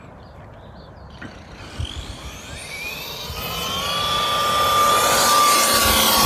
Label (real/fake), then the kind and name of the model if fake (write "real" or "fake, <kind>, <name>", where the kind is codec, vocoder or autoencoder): real